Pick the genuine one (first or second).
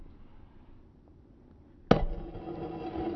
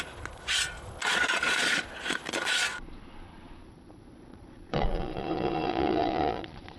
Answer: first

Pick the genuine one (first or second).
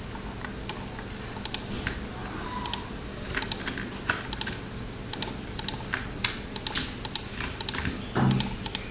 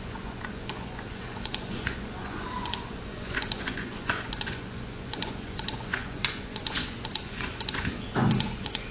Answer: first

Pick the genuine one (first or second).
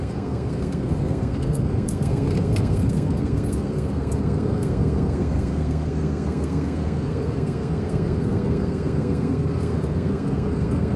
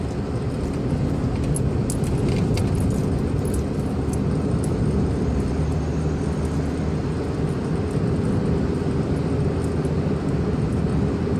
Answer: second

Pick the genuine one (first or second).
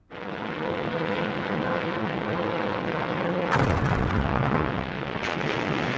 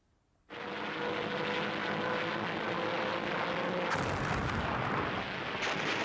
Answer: second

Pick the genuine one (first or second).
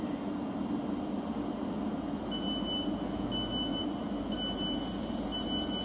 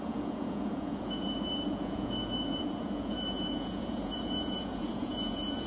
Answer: first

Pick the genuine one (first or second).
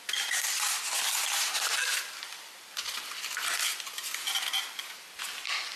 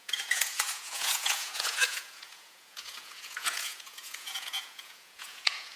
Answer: first